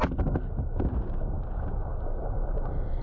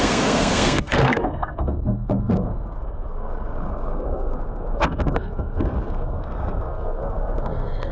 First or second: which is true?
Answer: first